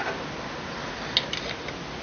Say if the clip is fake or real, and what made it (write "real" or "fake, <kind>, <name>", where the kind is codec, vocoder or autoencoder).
real